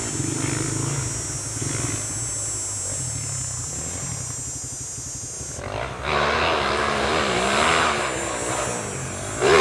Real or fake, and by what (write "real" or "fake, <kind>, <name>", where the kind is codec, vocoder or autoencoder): real